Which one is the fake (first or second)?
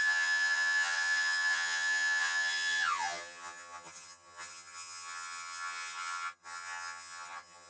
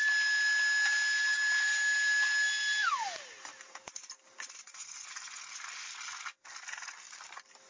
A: first